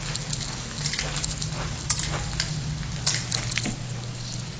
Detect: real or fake real